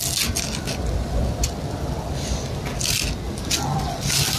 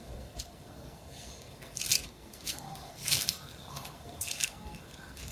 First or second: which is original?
first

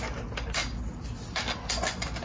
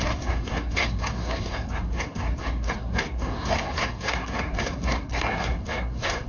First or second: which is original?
first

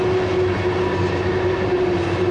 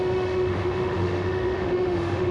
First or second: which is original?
first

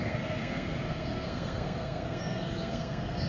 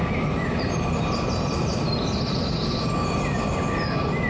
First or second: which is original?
second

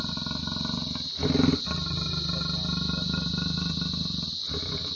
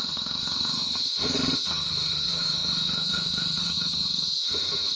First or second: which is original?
first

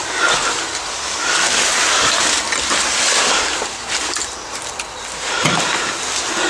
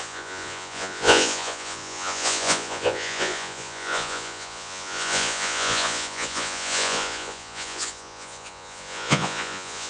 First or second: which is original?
first